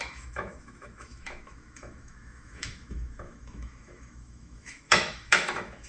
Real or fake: fake